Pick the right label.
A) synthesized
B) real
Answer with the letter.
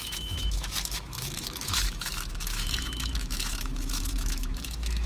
A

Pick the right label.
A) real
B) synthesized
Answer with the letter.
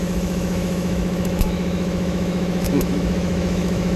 B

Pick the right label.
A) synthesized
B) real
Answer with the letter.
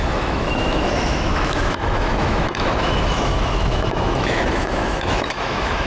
A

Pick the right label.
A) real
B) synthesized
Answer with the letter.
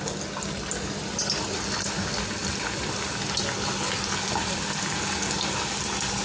A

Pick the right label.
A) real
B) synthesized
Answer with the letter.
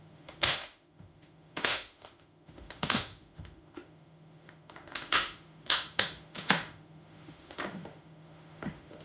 B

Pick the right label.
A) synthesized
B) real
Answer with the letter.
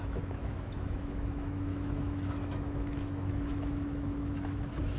A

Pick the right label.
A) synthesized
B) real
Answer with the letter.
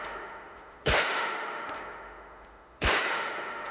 A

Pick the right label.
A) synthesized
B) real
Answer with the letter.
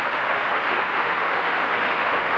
A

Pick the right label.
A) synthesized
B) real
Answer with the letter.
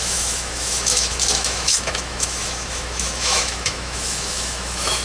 A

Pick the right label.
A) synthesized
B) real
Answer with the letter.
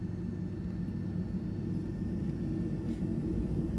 B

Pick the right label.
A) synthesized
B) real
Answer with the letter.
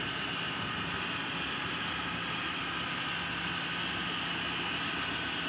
B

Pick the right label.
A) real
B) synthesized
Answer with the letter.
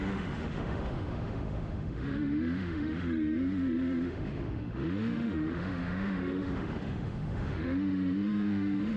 B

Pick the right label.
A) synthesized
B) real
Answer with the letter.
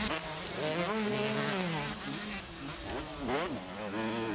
B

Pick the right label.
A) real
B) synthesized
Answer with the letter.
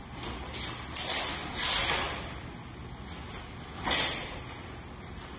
A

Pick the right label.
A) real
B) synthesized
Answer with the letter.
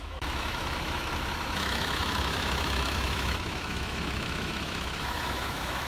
B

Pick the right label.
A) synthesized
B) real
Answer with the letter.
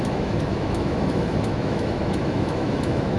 A